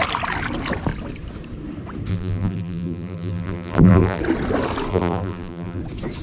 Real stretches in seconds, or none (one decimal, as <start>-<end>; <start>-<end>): 0.0-2.1; 4.2-4.9; 5.8-6.2